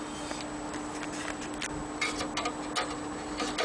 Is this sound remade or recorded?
recorded